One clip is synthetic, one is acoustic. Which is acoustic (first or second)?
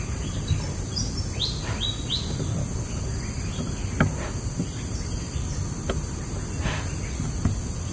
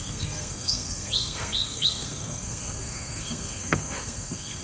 first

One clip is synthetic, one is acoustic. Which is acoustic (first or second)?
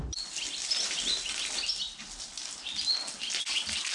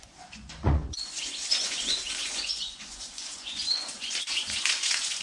first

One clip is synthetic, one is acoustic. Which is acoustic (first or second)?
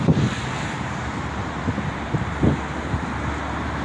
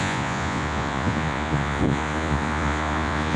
first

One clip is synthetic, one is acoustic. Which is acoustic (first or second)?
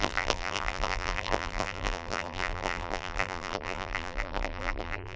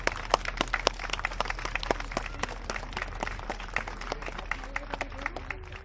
second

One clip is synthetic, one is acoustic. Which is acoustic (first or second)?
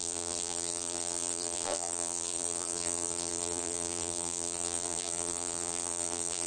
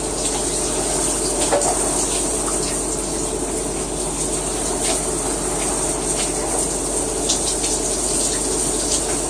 second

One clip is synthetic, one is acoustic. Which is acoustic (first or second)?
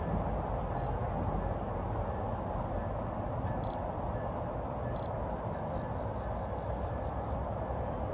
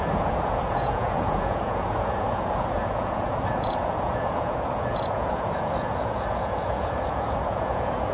first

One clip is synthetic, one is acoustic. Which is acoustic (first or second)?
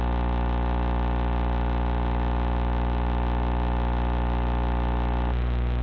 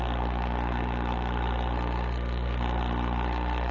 first